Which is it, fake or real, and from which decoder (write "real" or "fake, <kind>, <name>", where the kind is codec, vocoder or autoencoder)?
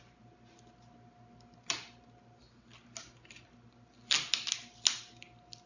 real